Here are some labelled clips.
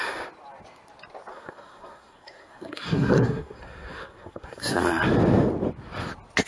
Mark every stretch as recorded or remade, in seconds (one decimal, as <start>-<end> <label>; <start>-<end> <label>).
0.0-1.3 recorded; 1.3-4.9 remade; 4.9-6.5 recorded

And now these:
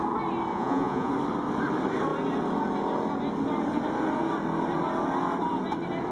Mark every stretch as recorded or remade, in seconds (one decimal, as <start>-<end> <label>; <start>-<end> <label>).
0.0-0.5 recorded; 0.5-1.1 remade; 1.1-6.1 recorded

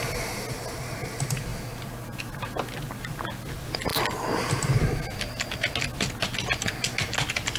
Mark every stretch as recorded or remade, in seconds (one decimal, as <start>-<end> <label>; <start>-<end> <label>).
0.0-7.6 recorded

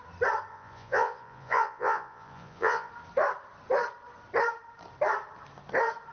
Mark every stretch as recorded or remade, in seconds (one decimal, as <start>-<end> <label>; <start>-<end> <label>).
0.0-0.5 recorded; 0.5-2.9 remade; 2.9-6.1 recorded

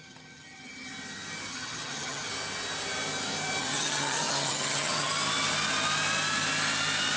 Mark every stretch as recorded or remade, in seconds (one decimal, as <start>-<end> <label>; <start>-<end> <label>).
0.0-0.9 remade; 0.9-1.5 recorded; 1.5-2.3 remade; 2.3-3.6 recorded; 3.6-5.1 remade; 5.1-7.2 recorded

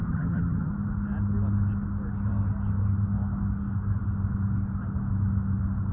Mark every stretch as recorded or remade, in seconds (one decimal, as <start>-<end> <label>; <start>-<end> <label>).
0.0-0.7 remade; 0.7-5.9 recorded

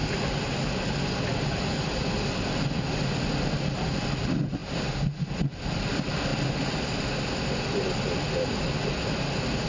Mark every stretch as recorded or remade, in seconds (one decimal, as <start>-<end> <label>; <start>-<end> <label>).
0.0-9.7 recorded